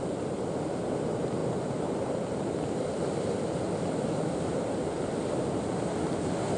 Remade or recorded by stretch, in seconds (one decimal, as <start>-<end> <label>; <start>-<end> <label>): 0.0-1.4 recorded; 1.4-5.4 remade; 5.4-6.6 recorded